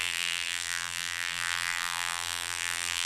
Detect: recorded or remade remade